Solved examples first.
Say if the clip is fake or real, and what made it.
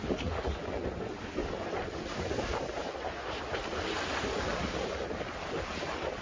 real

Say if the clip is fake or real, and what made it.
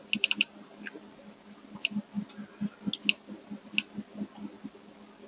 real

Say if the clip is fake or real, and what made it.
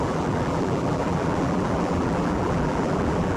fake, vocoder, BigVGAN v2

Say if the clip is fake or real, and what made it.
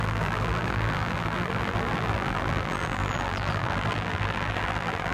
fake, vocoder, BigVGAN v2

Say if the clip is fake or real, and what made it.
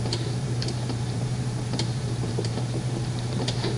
fake, vocoder, BigVGAN v2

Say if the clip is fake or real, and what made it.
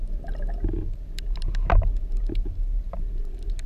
real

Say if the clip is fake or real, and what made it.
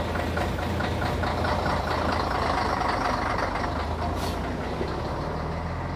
real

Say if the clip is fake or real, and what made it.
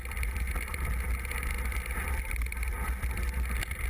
real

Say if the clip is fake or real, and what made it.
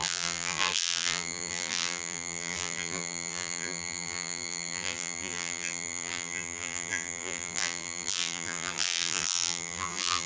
fake, vocoder, BigVGAN v2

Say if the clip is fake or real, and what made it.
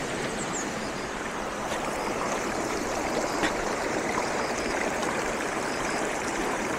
fake, vocoder, BigVGAN v2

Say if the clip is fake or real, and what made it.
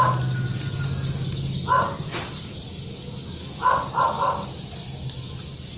real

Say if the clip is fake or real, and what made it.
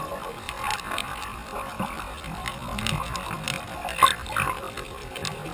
real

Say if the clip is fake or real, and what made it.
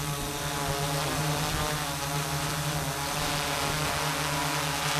real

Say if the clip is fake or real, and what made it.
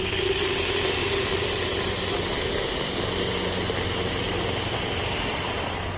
real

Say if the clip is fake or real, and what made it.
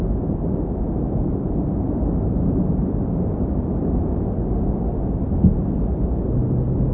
real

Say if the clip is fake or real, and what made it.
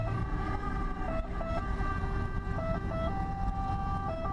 fake, vocoder, BigVGAN v2